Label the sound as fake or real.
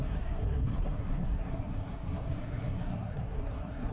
fake